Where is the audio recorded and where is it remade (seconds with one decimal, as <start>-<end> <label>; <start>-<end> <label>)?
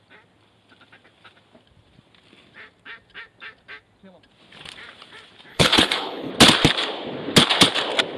0.0-5.5 recorded; 5.5-6.3 remade; 6.3-8.2 recorded